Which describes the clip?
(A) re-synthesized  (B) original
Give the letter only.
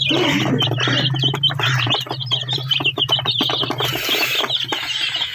B